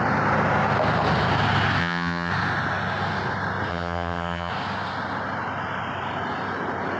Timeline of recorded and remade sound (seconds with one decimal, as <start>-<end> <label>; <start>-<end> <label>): 0.0-1.8 recorded; 1.8-2.3 remade; 2.3-3.7 recorded; 3.7-4.5 remade; 4.5-7.0 recorded